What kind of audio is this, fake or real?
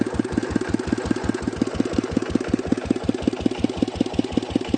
real